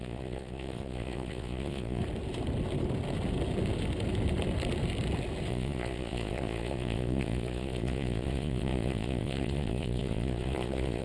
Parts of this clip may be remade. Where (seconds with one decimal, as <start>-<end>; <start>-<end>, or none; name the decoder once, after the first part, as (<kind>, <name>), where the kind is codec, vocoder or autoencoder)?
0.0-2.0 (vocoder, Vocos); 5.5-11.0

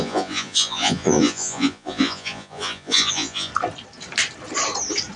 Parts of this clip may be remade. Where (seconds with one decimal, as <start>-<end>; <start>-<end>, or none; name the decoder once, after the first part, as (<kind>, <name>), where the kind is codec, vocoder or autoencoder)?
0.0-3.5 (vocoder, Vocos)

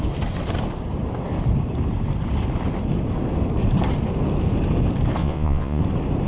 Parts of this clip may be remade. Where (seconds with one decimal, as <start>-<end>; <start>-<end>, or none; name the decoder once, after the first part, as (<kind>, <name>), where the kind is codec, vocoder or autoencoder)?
5.2-5.8 (vocoder, Vocos)

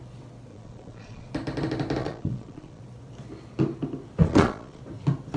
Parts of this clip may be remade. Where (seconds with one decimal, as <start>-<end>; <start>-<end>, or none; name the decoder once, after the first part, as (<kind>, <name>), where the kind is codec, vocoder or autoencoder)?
0.5-1.3 (vocoder, Vocos); 2.0-2.8; 4.2-4.8

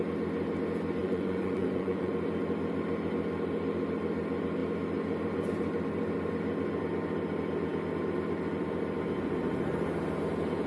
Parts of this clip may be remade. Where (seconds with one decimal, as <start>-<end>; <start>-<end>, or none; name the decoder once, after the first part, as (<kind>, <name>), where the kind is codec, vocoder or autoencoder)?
1.0-2.1 (vocoder, Vocos)

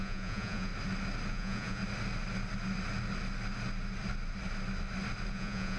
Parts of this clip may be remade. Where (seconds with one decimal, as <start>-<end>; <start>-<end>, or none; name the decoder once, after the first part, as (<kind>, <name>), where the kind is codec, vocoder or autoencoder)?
0.0-0.7 (vocoder, Vocos); 1.3-1.8; 5.3-5.8